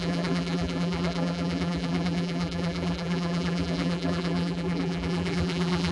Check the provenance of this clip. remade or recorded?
remade